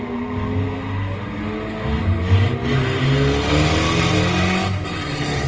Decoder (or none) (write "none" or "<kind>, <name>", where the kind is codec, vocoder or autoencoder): none